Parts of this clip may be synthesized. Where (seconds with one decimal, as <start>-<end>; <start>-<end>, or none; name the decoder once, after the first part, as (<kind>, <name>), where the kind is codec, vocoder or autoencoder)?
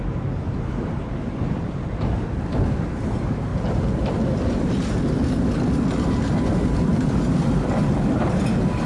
none